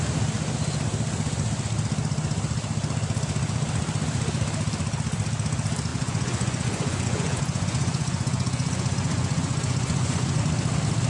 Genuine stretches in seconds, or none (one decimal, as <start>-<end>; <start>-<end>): 0.0-5.9; 10.4-11.1